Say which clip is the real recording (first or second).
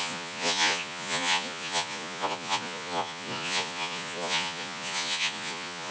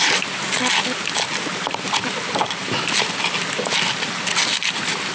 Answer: second